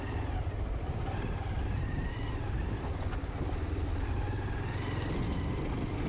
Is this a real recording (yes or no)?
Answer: yes